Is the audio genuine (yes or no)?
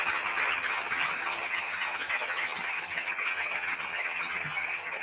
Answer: no